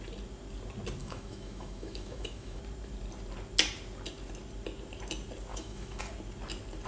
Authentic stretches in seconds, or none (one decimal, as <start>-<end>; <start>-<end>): 0.0-1.0; 2.6-5.5; 6.0-6.9